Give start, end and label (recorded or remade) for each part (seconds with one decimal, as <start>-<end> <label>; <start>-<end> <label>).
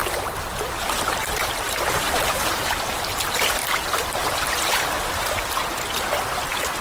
0.0-6.8 recorded